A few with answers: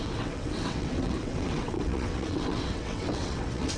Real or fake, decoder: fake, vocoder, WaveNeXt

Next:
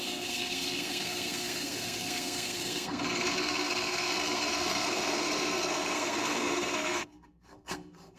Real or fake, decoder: fake, codec, SNAC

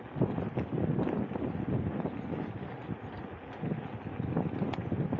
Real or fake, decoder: real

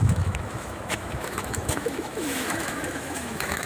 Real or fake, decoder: fake, autoencoder, DAC-VAE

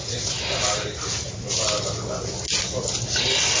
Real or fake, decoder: real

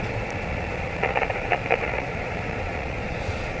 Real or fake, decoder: fake, vocoder, Vocos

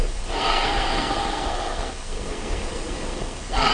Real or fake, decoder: fake, codec, SNAC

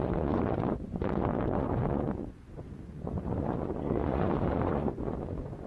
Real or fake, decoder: fake, vocoder, Vocos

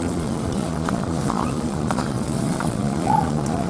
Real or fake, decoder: fake, vocoder, Vocos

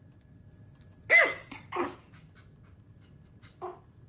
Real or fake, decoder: real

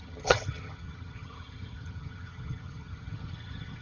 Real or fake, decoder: fake, vocoder, HiFi-GAN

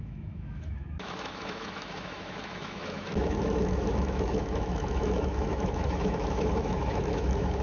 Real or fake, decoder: fake, autoencoder, DAC-VAE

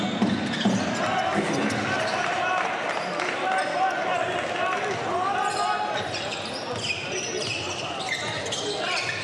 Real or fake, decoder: real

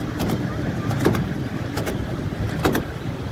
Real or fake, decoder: real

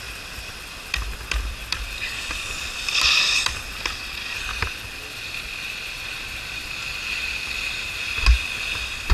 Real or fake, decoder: fake, vocoder, BigVGAN v2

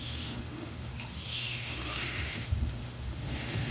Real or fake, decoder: fake, autoencoder, DAC-VAE